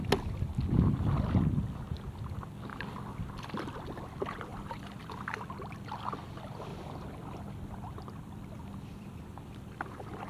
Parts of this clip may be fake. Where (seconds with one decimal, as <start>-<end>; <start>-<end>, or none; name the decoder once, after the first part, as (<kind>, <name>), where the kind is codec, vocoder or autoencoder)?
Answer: 2.7-3.2 (vocoder, BigVGAN v2); 4.5-5.2; 6.7-9.2